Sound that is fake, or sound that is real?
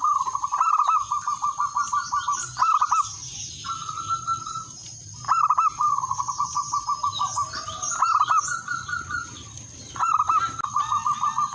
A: real